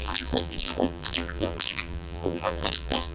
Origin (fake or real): fake